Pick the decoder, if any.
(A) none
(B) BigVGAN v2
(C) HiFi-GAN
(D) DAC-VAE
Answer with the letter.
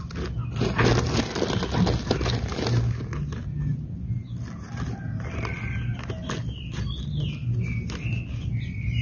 A